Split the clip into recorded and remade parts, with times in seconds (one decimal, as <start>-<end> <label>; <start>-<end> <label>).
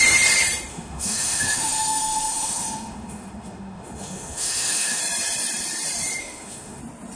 0.0-0.7 recorded; 0.7-5.0 remade; 5.0-6.2 recorded; 6.2-6.8 remade; 6.8-7.2 recorded